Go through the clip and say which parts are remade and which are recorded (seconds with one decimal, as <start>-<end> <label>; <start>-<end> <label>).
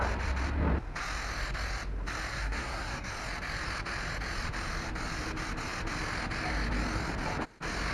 0.0-2.3 recorded; 2.3-3.1 remade; 3.1-7.9 recorded